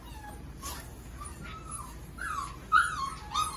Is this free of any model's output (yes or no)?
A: yes